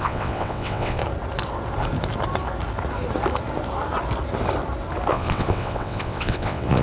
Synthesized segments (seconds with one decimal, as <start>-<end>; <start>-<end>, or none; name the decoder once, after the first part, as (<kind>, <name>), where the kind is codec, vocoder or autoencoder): 0.0-1.0 (vocoder, WaveNeXt); 5.1-6.8